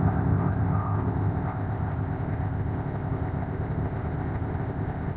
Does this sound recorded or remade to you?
remade